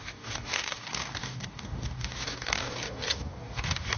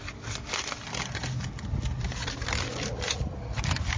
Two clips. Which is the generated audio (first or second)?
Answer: first